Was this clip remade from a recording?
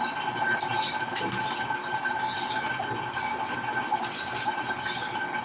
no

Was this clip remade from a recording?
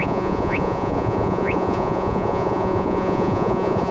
yes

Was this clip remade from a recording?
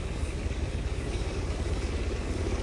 yes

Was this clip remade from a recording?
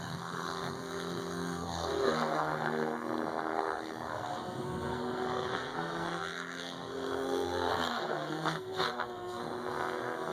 yes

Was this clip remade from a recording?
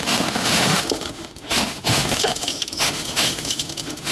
yes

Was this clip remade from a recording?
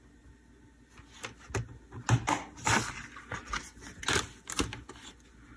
no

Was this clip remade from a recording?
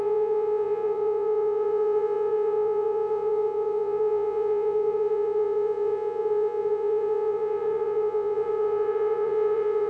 yes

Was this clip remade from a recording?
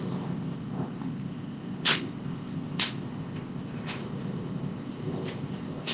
yes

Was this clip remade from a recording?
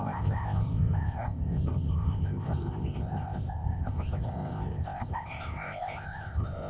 yes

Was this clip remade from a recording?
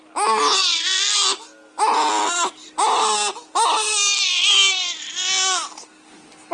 no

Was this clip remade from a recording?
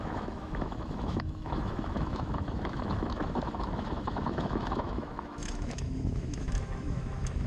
yes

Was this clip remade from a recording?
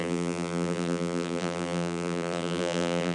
yes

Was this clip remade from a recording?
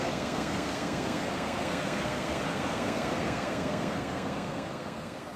yes